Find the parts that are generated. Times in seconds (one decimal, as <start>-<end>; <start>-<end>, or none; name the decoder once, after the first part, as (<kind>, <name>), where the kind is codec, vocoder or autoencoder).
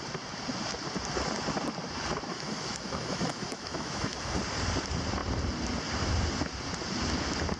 2.3-4.4 (autoencoder, DAC-VAE)